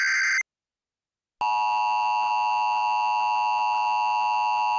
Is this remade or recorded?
recorded